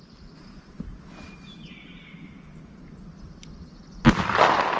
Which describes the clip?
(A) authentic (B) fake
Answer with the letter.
A